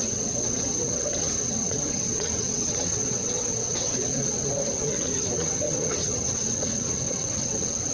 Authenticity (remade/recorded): remade